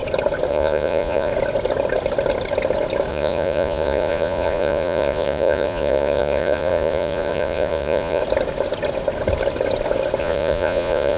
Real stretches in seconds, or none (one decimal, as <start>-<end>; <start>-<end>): 0.0-0.5; 1.3-3.1; 8.2-10.2